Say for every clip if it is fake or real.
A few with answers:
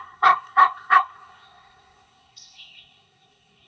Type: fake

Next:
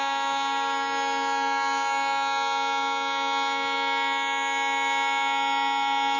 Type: real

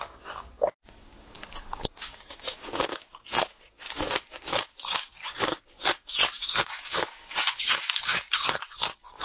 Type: fake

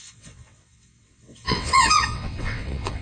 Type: fake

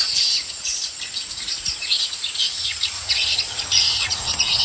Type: fake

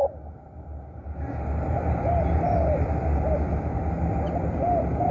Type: real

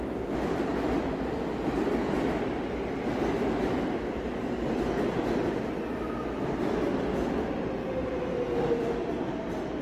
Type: real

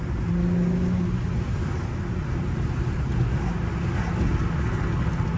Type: real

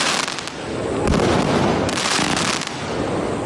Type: fake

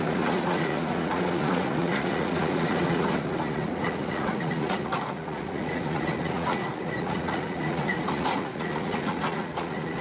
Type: fake